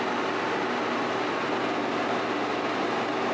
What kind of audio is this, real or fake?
real